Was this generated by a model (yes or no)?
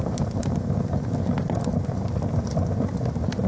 no